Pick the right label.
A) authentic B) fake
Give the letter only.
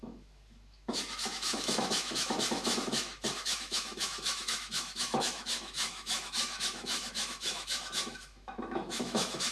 B